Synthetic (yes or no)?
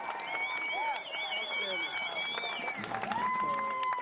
no